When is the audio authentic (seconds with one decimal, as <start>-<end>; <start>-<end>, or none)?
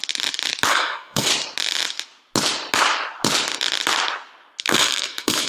0.0-0.7; 1.3-4.6